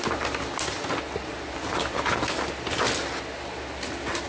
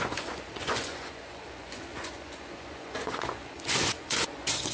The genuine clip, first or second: first